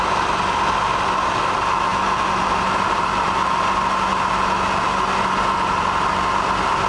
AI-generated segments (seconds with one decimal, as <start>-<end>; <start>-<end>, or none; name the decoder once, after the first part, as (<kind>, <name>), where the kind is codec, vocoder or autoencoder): none